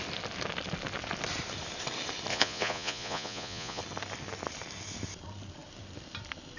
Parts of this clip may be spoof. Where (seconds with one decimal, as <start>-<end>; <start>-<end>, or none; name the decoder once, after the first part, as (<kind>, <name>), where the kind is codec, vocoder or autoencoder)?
2.3-3.8 (vocoder, Vocos)